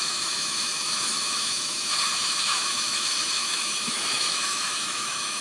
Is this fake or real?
fake